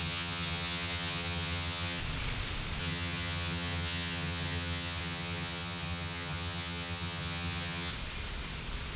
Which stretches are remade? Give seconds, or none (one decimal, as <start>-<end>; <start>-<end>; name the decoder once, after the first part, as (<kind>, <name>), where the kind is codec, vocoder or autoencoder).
0.0-2.0 (vocoder, HiFi-GAN); 2.8-7.9